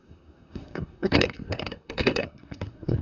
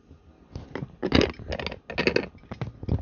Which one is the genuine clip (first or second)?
second